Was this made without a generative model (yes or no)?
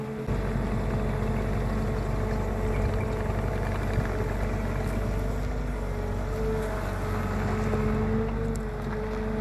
yes